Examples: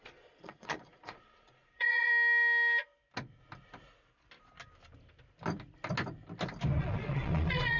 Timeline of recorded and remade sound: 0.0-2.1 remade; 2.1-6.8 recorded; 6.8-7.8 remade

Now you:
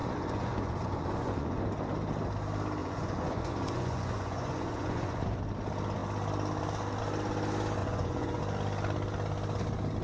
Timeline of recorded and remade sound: 0.0-1.6 remade; 1.6-2.8 recorded; 2.8-5.4 remade; 5.4-7.8 recorded; 7.8-8.4 remade; 8.4-10.0 recorded

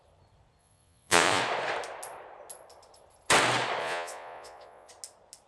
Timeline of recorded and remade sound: 0.0-0.6 recorded; 0.6-1.4 remade; 1.4-3.8 recorded; 3.8-4.9 remade; 4.9-5.5 recorded

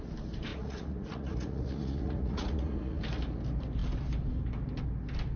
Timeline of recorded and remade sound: 0.0-0.5 recorded; 0.5-3.0 remade; 3.0-5.4 recorded

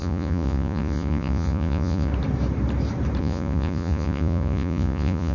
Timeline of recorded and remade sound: 0.0-2.1 remade; 2.1-3.2 recorded; 3.2-5.3 remade

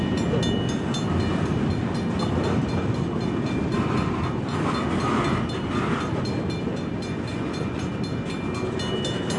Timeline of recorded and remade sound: 0.0-7.3 recorded; 7.3-7.9 remade; 7.9-9.4 recorded

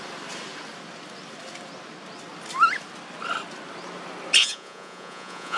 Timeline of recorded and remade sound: 0.0-4.4 recorded; 4.4-5.6 remade

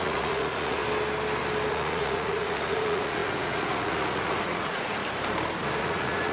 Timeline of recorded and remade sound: 0.0-0.8 remade; 0.8-1.7 recorded; 1.7-5.0 remade; 5.0-5.8 recorded; 5.8-6.3 remade